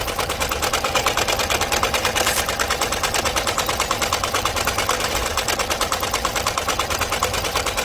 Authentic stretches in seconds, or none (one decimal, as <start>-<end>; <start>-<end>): 0.0-7.8